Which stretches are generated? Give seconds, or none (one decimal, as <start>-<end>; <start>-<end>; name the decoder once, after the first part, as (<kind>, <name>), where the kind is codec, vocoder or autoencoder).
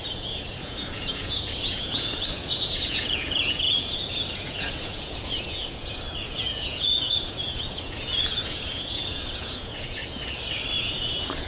0.0-10.0 (vocoder, Vocos); 10.8-11.5